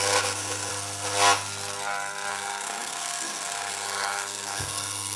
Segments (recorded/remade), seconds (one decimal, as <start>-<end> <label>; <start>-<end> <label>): 0.0-0.7 remade; 0.7-2.3 recorded; 2.3-5.2 remade